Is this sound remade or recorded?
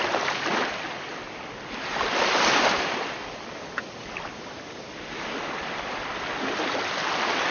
recorded